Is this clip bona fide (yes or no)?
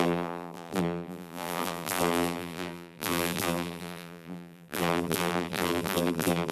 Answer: no